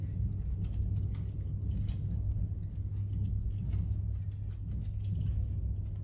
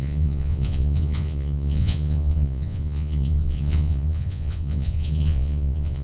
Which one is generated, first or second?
second